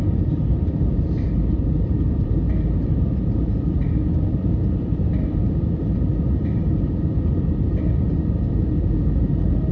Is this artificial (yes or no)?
yes